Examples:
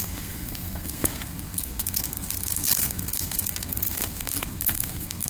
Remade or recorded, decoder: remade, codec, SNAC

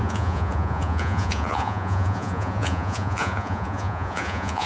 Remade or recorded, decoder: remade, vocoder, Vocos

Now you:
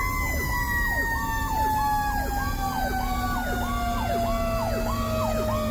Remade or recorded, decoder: recorded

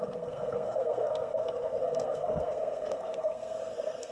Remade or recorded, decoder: remade, codec, SNAC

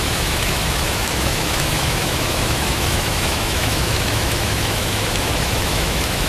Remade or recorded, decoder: remade, autoencoder, DAC-VAE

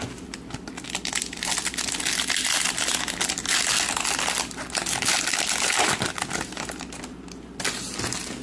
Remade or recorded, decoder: recorded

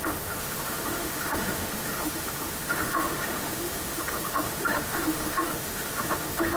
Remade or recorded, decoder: remade, autoencoder, DAC-VAE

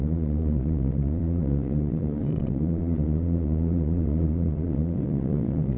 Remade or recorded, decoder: remade, vocoder, Vocos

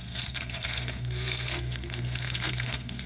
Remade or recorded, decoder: remade, codec, SNAC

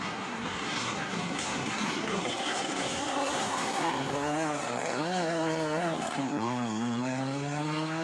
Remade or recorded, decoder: remade, codec, SNAC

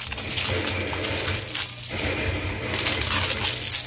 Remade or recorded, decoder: recorded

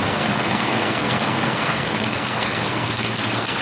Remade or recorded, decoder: remade, codec, SNAC